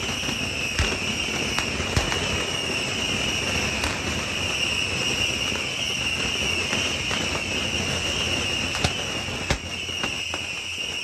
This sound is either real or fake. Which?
real